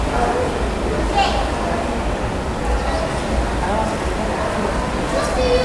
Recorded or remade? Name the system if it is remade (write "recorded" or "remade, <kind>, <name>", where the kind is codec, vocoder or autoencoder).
recorded